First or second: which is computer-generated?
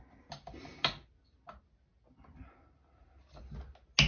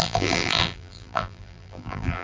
second